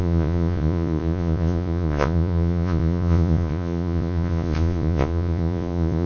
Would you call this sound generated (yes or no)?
yes